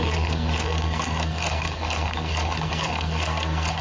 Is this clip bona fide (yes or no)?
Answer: no